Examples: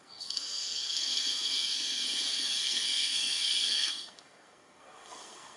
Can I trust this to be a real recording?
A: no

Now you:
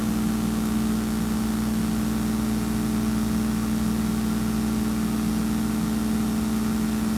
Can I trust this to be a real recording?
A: yes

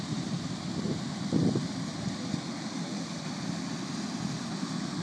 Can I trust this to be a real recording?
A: yes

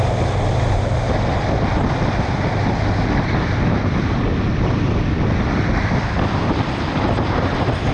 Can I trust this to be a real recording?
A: yes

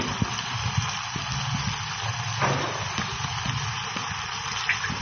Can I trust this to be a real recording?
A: yes